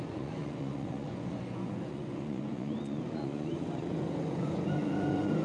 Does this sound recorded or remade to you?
remade